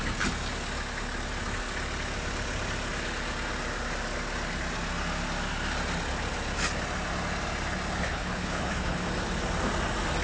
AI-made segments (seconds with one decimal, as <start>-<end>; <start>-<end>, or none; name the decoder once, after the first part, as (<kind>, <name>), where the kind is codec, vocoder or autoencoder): 8.0-9.1 (codec, HILCodec)